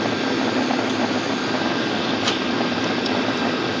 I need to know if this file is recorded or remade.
recorded